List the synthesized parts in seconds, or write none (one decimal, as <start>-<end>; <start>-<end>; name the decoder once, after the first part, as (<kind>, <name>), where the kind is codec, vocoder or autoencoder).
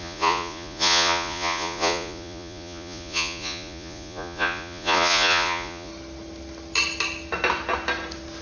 0.0-5.9 (vocoder, Vocos)